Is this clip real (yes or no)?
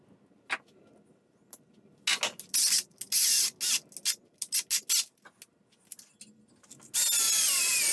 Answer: yes